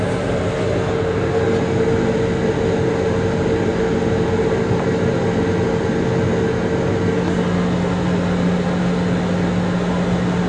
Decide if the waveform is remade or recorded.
recorded